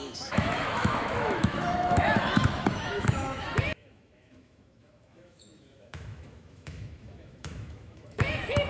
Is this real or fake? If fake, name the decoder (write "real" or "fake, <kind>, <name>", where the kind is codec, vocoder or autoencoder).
fake, autoencoder, DAC-VAE